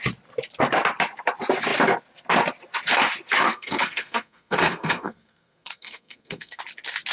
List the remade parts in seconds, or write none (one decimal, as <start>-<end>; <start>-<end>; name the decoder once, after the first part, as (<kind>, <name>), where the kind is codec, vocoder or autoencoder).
3.5-6.6 (codec, SNAC)